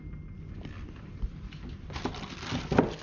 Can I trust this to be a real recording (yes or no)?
yes